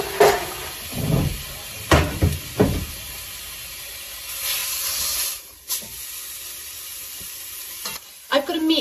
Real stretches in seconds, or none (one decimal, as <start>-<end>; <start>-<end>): 0.0-0.9; 1.5-6.9; 8.3-8.8